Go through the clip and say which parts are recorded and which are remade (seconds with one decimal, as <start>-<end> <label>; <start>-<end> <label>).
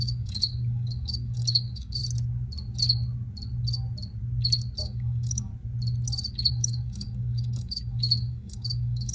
0.0-2.0 remade; 2.0-4.8 recorded; 4.8-5.5 remade; 5.5-6.5 recorded; 6.5-9.1 remade